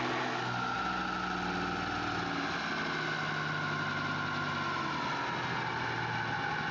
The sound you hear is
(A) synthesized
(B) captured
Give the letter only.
B